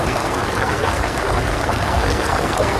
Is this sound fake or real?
fake